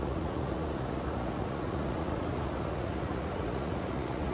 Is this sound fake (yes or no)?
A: yes